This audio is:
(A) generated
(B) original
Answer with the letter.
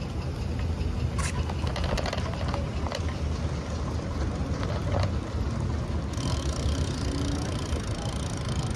B